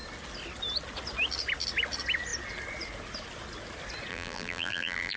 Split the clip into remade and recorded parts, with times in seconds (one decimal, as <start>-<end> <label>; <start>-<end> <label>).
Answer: 0.0-4.1 recorded; 4.1-5.2 remade